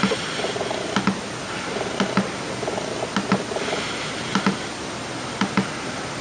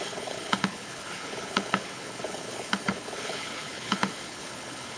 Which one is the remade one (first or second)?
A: second